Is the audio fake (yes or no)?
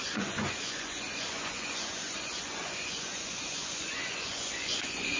yes